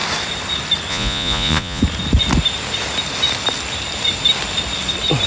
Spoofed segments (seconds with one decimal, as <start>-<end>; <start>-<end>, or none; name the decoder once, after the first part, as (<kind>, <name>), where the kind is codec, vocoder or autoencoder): 0.9-1.8 (vocoder, Vocos)